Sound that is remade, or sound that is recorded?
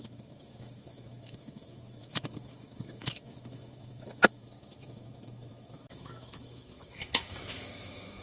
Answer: remade